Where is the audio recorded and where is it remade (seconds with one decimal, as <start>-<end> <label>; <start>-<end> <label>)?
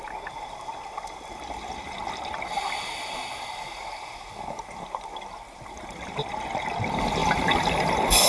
0.0-8.3 recorded